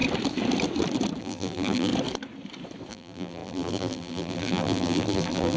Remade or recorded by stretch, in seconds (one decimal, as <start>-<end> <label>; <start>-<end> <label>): 0.0-1.2 recorded; 1.2-1.9 remade; 1.9-2.9 recorded; 2.9-5.6 remade